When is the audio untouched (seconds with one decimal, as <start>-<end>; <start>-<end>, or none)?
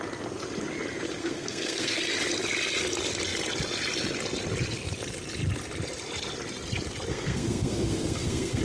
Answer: 0.0-1.2; 2.0-7.1